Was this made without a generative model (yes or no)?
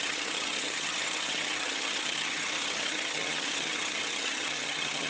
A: no